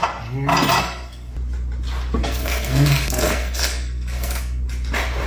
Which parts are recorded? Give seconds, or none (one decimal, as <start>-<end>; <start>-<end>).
0.0-0.8; 1.3-2.2; 4.6-5.3